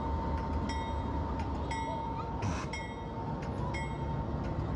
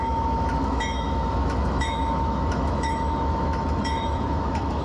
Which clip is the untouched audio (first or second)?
first